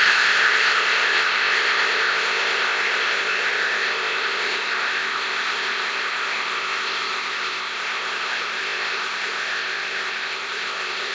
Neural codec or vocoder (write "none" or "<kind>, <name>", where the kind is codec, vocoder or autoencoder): codec, ZipCodec